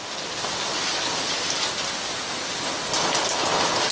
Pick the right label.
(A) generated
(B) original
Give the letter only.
B